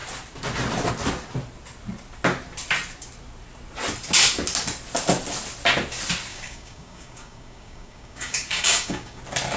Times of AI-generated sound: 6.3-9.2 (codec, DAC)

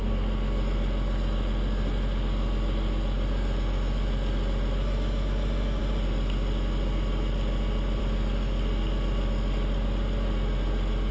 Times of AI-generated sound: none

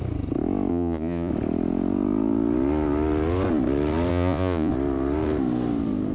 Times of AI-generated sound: 0.7-1.3 (vocoder, Vocos); 4.1-4.7

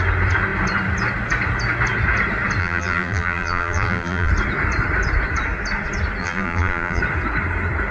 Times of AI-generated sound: 2.6-4.3 (vocoder, BigVGAN v2); 6.2-7.0